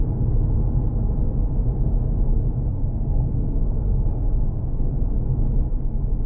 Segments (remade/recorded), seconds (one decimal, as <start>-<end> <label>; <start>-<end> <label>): 0.0-2.7 recorded; 2.7-4.9 remade; 4.9-6.3 recorded

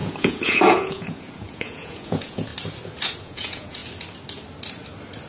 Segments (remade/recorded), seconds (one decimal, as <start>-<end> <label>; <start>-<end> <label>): 0.0-2.5 remade; 2.5-3.2 recorded; 3.2-3.8 remade; 3.8-5.3 recorded

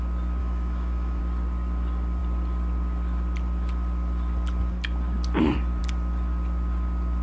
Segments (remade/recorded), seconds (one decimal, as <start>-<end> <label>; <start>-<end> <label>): 0.0-0.4 recorded; 0.4-1.2 remade; 1.2-7.2 recorded

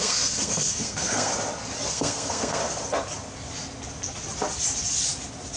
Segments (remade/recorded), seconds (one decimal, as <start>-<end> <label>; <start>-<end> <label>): 0.0-1.3 remade; 1.3-1.9 recorded; 1.9-2.6 remade; 2.6-5.6 recorded